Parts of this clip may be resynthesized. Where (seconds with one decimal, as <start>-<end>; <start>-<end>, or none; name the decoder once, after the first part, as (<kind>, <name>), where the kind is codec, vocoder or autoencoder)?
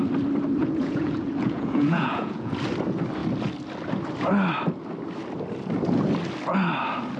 0.6-2.5 (vocoder, Vocos)